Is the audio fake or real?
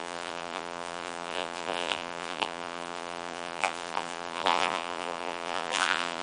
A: fake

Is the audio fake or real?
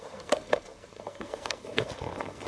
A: fake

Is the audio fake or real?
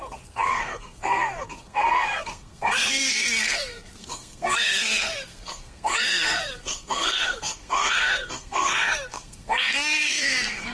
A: fake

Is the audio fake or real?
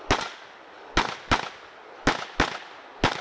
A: real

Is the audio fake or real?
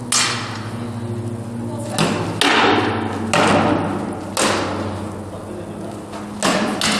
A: real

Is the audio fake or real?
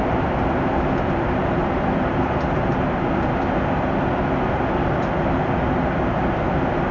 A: real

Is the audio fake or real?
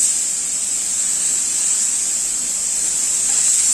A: real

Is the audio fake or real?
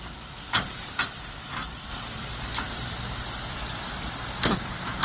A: real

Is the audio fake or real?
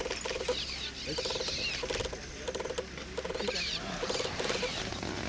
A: real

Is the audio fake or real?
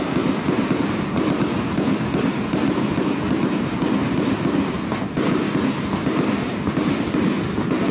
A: real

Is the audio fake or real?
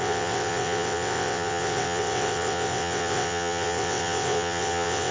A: fake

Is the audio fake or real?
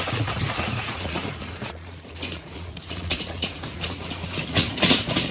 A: fake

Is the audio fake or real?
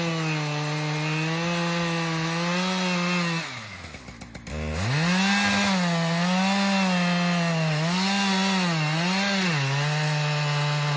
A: real